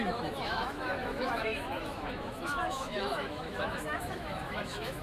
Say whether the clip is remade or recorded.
remade